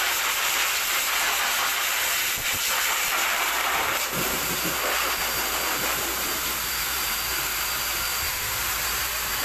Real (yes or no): no